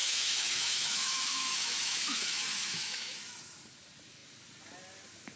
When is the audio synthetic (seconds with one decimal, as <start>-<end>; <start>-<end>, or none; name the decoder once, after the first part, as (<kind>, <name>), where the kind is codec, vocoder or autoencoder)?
0.0-3.2 (autoencoder, DAC-VAE)